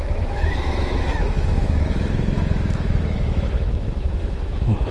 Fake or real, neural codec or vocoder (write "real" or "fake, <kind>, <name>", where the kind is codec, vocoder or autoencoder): fake, autoencoder, DAC-VAE